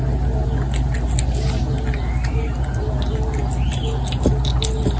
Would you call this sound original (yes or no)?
yes